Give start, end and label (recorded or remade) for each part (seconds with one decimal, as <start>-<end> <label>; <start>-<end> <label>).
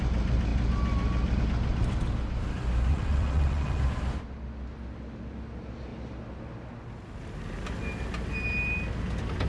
0.0-2.9 recorded; 2.9-3.8 remade; 3.8-9.5 recorded